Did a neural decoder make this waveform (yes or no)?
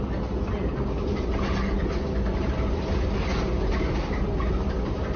no